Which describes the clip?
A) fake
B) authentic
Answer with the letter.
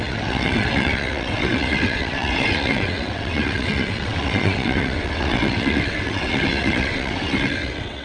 A